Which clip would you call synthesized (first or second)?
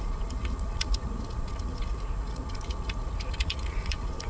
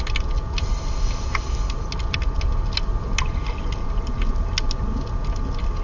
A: first